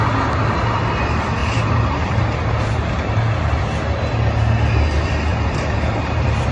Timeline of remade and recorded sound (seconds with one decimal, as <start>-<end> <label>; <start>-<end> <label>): 0.0-1.4 recorded; 1.4-3.6 remade; 3.6-5.3 recorded; 5.3-6.5 remade